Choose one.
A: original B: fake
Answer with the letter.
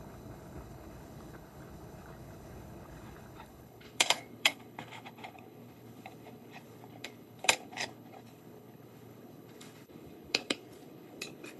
B